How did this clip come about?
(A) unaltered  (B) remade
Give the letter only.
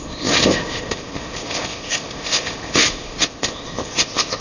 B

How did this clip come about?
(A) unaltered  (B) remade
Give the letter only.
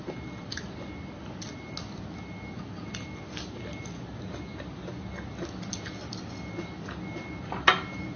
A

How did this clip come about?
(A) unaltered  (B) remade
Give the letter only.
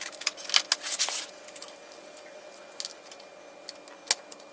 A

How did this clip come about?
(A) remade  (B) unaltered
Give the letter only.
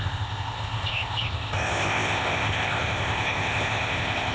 A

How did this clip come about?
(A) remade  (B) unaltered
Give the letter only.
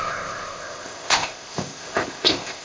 A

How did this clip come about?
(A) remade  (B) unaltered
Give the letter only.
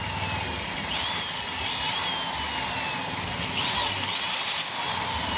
B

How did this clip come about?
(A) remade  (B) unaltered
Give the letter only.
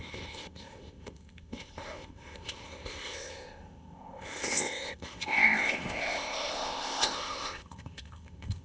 A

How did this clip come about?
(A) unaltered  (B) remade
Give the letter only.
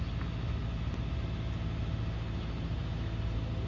A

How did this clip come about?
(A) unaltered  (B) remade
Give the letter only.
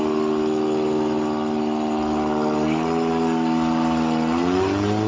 A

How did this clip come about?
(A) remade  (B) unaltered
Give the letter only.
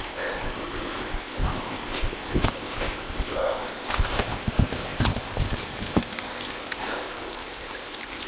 A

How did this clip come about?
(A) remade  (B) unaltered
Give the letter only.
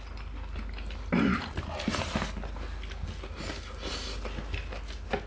B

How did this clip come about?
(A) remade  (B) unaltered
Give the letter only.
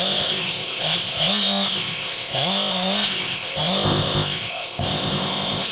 A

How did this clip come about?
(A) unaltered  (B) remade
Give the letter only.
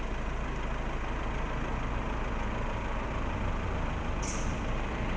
A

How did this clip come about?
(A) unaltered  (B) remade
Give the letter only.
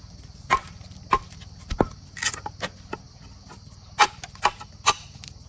A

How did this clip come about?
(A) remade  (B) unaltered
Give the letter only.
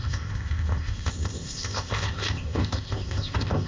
A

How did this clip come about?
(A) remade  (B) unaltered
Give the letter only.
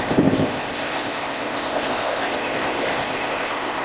A